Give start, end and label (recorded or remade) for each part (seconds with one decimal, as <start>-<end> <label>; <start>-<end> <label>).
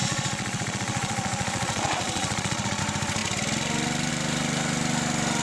0.0-2.8 remade; 2.8-5.4 recorded